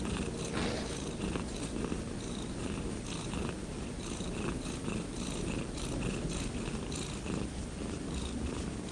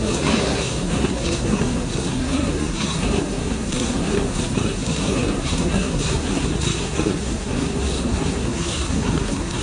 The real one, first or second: first